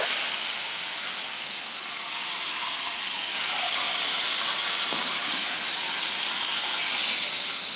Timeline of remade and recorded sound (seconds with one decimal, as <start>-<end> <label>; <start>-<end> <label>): 0.0-7.8 recorded